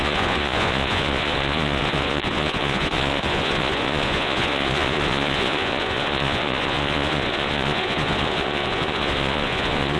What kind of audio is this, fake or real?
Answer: fake